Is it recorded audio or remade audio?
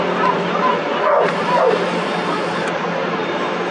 recorded